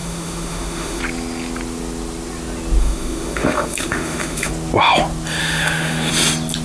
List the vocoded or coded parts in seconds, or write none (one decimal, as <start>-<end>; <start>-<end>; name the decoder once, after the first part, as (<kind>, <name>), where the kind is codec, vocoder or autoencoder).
0.0-1.0 (autoencoder, DAC-VAE); 2.8-4.5; 5.4-6.1